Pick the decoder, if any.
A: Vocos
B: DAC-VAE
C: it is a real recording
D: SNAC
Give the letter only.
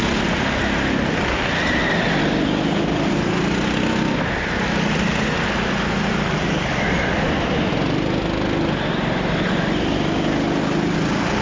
C